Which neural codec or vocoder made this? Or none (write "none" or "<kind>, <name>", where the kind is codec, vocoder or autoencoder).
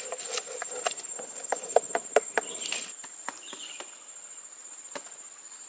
none